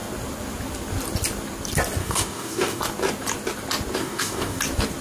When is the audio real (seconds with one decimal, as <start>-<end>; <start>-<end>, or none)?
0.0-2.0; 2.8-4.0; 4.6-5.0

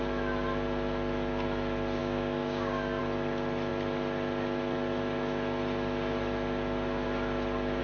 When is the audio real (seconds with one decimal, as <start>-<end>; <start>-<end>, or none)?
0.0-2.0; 3.0-7.8

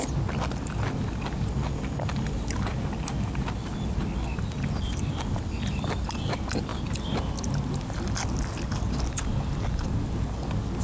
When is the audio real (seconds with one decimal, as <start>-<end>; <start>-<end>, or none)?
0.0-10.8

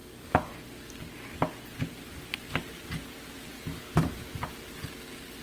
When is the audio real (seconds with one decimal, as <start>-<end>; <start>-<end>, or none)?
0.6-3.7; 4.2-5.4

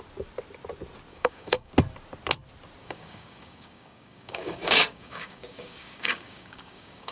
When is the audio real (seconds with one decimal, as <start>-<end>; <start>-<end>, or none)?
0.0-1.1; 1.7-2.8

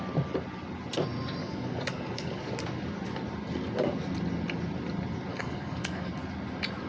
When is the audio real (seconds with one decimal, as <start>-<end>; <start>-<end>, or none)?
0.0-1.4; 2.5-5.3; 6.1-6.9

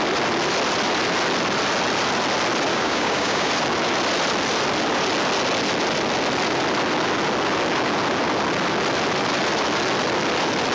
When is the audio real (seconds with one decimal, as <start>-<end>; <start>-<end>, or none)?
0.0-2.7; 3.5-10.7